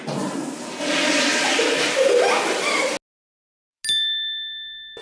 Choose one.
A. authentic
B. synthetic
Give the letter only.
A